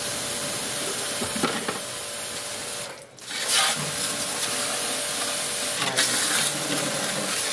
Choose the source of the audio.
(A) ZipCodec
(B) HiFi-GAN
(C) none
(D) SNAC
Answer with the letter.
C